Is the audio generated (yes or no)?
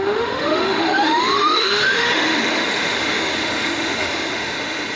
yes